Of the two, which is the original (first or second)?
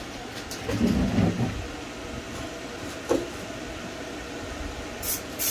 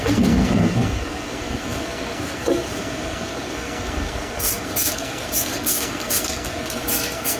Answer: first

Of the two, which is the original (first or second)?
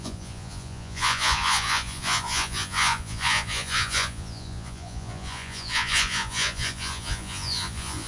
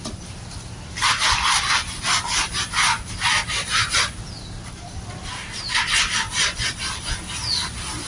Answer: second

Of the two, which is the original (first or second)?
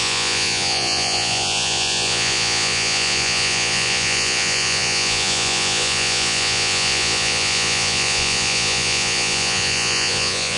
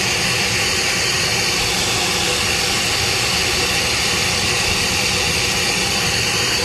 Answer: second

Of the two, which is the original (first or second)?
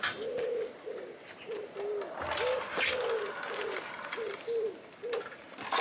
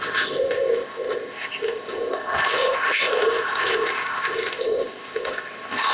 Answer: first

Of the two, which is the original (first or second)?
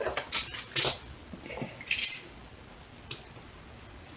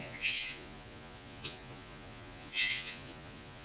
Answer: first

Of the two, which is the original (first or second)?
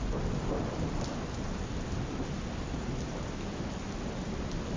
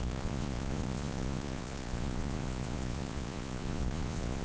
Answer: first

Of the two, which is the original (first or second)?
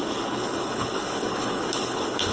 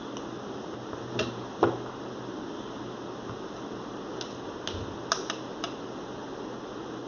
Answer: second